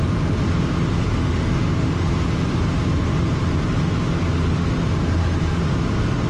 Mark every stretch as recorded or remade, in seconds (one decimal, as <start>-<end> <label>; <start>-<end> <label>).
0.0-1.2 recorded; 1.2-1.9 remade; 1.9-6.3 recorded